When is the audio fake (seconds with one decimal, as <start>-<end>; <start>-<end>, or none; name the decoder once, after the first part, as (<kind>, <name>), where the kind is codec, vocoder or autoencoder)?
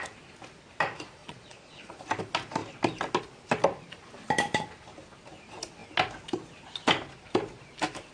1.2-2.0 (vocoder, Vocos)